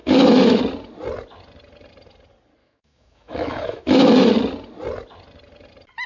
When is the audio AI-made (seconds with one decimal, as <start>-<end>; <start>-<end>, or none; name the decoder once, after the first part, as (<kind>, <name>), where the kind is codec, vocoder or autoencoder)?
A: 0.0-0.6 (autoencoder, DAC-VAE); 2.6-4.3